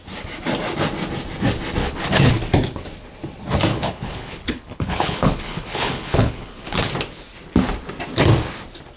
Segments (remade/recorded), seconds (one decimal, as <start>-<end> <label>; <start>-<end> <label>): 0.0-1.8 recorded; 1.8-2.3 remade; 2.3-3.7 recorded; 3.7-6.9 remade; 6.9-9.0 recorded